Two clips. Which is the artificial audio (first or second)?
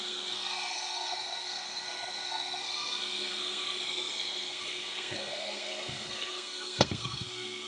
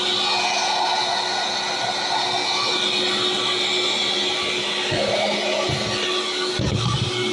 first